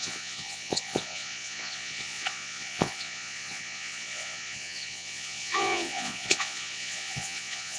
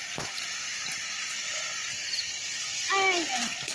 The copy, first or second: first